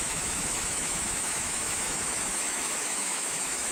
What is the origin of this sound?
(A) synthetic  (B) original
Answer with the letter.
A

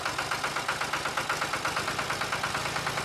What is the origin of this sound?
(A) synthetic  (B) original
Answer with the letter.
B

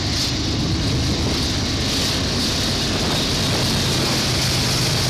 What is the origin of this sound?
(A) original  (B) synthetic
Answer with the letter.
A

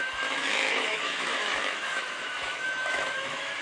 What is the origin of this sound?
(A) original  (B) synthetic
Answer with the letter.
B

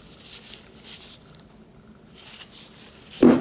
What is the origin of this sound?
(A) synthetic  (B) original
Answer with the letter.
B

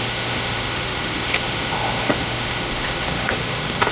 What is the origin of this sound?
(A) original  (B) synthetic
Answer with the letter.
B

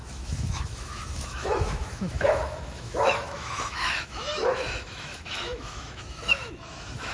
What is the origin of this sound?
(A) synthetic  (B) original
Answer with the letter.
A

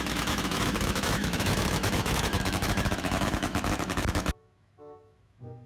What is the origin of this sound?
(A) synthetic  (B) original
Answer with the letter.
A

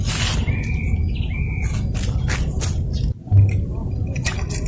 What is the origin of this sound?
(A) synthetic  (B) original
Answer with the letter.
B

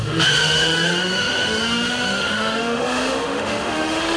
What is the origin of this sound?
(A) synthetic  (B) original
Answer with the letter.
A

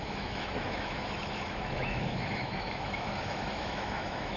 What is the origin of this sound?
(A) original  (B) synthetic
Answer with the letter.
B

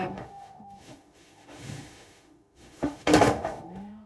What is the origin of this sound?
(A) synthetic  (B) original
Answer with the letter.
A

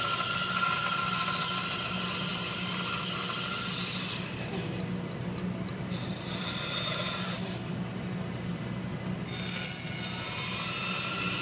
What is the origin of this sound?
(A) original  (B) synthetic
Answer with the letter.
A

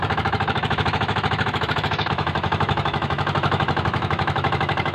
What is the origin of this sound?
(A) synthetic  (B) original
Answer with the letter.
A